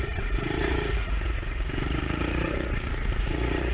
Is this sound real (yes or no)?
no